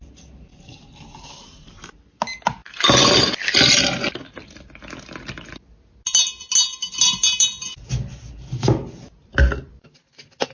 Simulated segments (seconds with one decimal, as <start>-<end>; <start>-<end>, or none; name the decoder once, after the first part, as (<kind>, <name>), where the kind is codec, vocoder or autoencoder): none